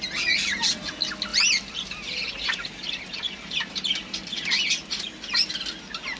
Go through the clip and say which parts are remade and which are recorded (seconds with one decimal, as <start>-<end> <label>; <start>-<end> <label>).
0.0-1.3 recorded; 1.3-4.6 remade; 4.6-6.2 recorded